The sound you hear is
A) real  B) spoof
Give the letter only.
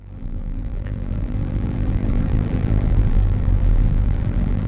B